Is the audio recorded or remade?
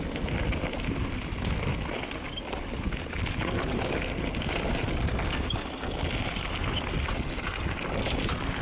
recorded